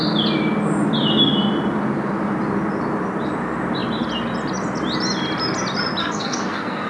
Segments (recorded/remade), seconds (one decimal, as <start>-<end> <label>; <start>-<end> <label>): 0.0-6.0 recorded; 6.0-6.9 remade